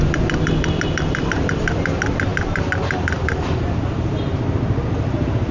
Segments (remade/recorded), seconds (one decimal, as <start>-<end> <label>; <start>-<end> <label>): 0.0-5.5 recorded